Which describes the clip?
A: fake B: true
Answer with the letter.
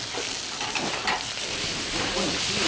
B